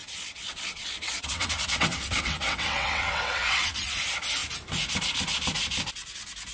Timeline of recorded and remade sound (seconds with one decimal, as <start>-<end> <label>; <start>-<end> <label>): 0.0-3.9 remade; 3.9-6.5 recorded